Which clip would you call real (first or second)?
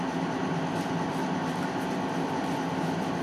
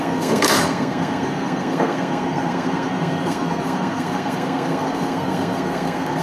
first